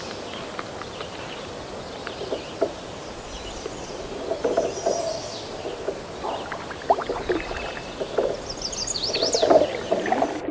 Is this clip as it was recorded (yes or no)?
yes